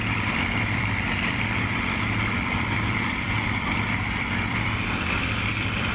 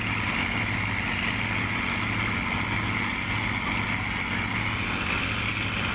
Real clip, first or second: second